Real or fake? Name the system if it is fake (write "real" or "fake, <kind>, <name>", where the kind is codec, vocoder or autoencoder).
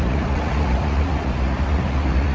fake, vocoder, Vocos